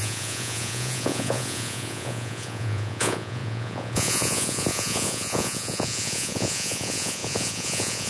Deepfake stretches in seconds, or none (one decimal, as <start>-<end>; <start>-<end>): 0.0-8.1